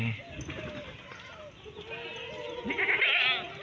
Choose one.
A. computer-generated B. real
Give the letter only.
B